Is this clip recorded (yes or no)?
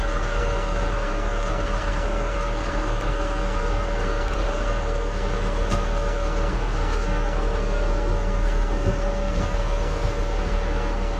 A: no